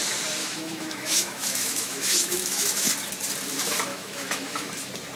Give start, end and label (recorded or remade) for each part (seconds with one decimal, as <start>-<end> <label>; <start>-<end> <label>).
0.0-0.4 recorded; 0.4-2.9 remade; 2.9-3.9 recorded; 3.9-4.7 remade; 4.7-5.2 recorded